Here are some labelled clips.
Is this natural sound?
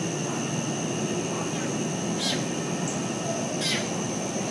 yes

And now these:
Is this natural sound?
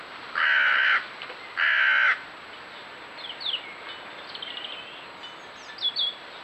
yes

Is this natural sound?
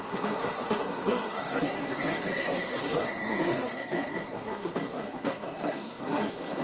no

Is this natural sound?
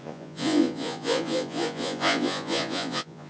no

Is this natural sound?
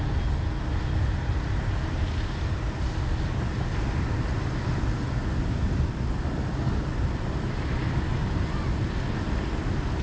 yes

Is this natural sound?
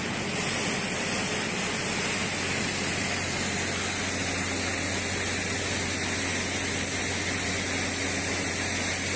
yes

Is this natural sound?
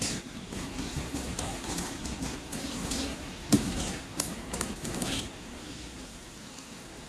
no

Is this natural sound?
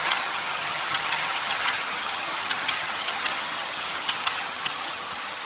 no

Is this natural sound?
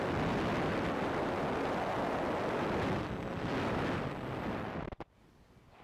yes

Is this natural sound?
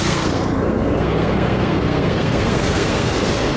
no